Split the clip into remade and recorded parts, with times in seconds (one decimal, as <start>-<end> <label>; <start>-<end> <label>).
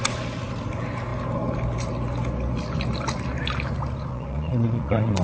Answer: 0.0-4.1 recorded; 4.1-5.2 remade